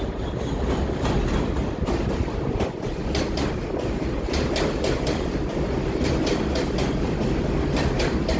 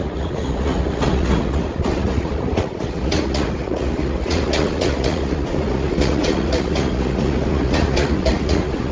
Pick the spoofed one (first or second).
second